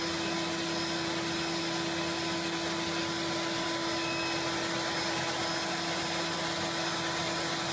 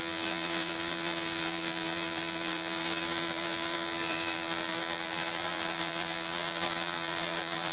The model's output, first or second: second